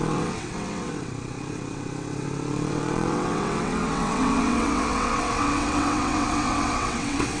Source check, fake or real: fake